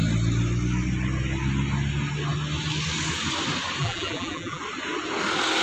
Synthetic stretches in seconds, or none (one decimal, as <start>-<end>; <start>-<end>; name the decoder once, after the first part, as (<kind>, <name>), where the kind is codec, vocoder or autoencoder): 3.8-4.6 (vocoder, BigVGAN v2)